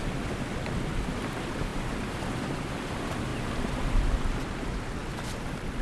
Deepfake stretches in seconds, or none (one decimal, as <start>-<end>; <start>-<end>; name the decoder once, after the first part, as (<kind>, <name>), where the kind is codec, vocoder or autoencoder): none